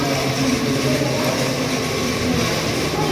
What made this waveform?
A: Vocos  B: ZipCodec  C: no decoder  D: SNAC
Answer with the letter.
C